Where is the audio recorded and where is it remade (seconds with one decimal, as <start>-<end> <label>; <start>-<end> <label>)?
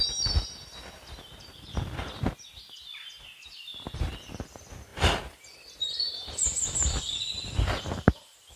0.0-3.7 recorded; 3.7-4.4 remade; 4.4-4.9 recorded; 4.9-7.8 remade; 7.8-8.6 recorded